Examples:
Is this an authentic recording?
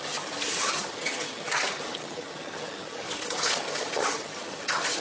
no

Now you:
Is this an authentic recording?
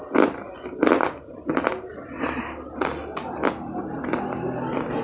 yes